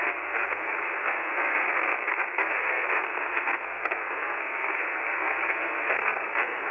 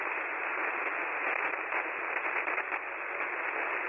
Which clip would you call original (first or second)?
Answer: second